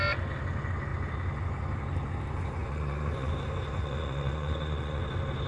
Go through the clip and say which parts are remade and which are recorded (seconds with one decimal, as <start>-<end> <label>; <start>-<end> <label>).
0.0-2.6 recorded; 2.6-3.3 remade; 3.3-3.8 recorded; 3.8-5.0 remade; 5.0-5.5 recorded